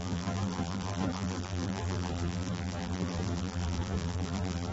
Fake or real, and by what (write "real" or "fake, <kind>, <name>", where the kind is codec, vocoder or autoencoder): fake, vocoder, BigVGAN v2